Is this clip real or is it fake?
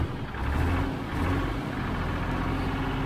real